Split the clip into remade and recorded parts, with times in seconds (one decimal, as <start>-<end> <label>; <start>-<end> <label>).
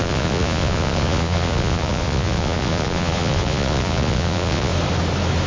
0.0-4.7 remade; 4.7-5.5 recorded